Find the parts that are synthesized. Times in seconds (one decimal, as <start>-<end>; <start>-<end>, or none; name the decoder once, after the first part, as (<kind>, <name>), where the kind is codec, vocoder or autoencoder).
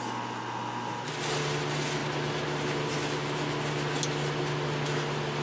none